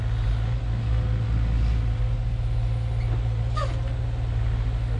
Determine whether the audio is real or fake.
real